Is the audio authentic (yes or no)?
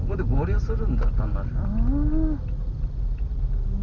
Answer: yes